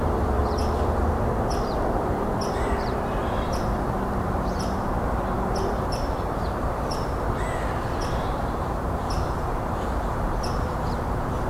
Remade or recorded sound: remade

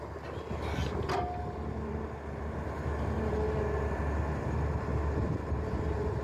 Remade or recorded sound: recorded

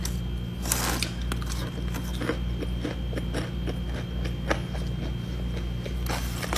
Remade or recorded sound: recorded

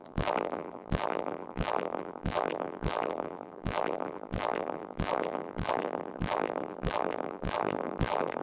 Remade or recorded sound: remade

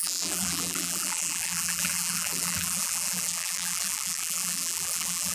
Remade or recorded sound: remade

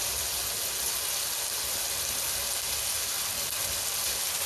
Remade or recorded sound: recorded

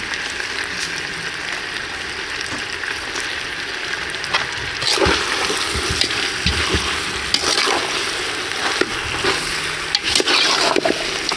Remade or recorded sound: recorded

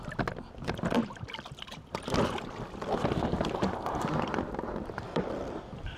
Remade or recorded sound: remade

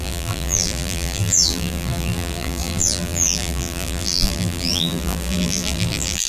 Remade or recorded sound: remade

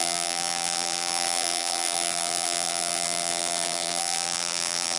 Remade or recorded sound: remade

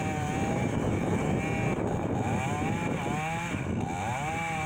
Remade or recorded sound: recorded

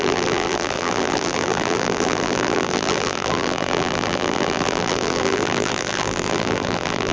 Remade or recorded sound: remade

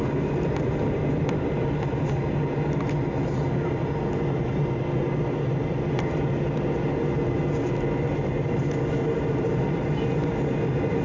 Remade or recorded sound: recorded